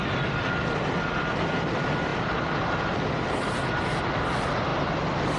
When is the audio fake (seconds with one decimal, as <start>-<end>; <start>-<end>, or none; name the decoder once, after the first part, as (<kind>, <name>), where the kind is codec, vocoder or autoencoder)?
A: none